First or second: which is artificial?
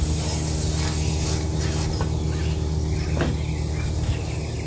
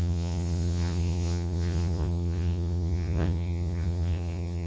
second